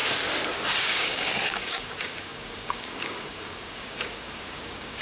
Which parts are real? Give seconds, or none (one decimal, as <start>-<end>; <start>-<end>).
0.0-0.8

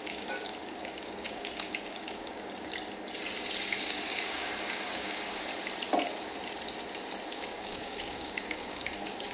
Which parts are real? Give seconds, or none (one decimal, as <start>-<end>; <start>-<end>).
2.7-3.8; 5.5-7.3